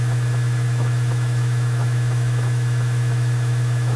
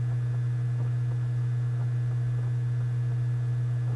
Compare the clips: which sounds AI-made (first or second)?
first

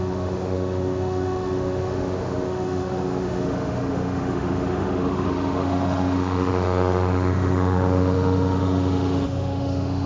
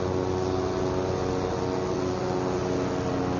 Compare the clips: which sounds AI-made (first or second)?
first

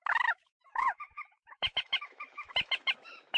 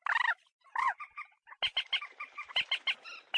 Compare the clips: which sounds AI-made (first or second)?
first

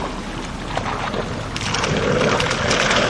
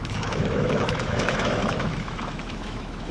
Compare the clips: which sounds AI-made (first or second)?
second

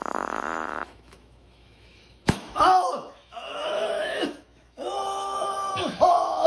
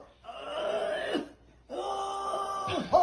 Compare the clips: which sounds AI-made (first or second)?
first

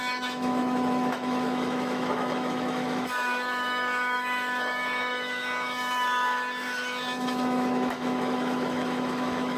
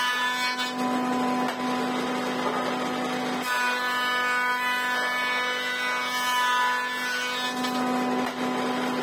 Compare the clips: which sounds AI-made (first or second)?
first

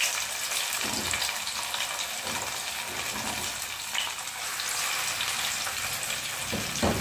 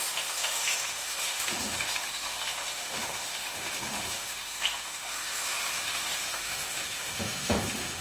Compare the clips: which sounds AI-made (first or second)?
second